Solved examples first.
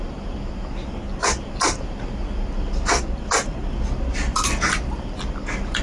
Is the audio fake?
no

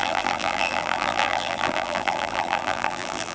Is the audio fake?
yes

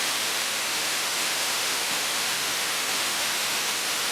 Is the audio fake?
yes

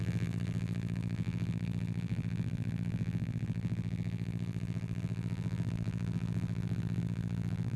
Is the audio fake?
yes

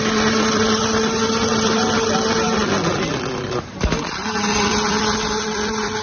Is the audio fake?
no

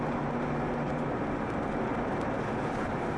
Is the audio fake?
no